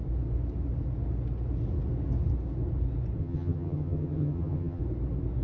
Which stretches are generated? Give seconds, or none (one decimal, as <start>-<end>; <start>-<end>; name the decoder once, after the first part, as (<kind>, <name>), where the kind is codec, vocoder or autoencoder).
3.2-4.8 (vocoder, HiFi-GAN)